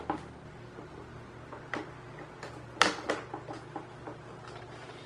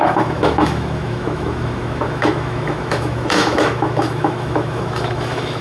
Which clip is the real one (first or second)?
first